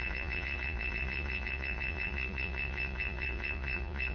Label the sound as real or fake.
fake